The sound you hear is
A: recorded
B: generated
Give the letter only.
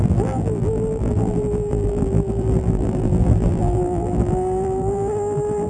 B